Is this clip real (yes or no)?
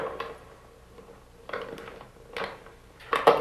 yes